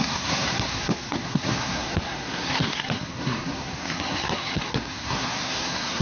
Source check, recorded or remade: remade